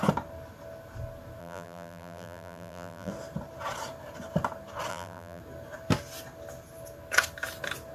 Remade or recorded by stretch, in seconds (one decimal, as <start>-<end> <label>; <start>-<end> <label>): 0.0-1.4 recorded; 1.4-3.1 remade; 3.1-4.9 recorded; 4.9-5.4 remade; 5.4-7.9 recorded